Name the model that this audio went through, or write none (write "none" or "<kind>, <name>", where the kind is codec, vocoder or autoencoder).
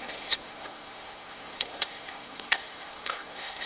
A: codec, SNAC